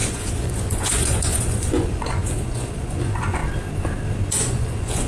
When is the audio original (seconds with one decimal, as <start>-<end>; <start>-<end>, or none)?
3.4-4.3